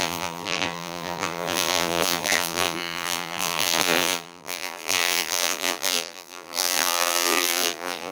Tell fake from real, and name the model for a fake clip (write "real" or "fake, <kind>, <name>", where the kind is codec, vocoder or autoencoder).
fake, vocoder, BigVGAN v2